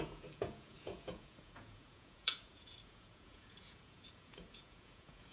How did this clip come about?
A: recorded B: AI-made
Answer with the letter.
B